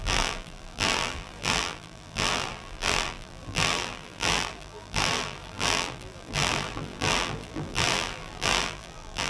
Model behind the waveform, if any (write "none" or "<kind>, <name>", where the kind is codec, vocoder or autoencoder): vocoder, BigVGAN v2